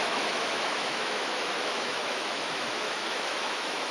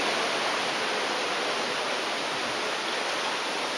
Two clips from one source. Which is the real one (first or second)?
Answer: second